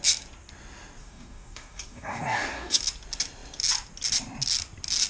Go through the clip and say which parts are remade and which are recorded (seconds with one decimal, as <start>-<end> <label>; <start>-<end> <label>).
0.0-1.0 recorded; 1.0-2.8 remade; 2.8-5.1 recorded